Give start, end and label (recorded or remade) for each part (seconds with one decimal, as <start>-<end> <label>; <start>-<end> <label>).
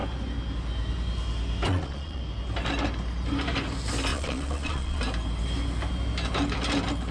0.0-1.7 recorded; 1.7-2.2 remade; 2.2-4.1 recorded; 4.1-5.0 remade; 5.0-7.1 recorded